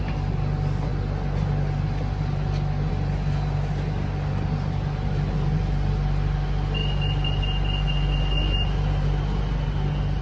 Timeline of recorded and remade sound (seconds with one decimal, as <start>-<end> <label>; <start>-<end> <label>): 0.0-10.2 recorded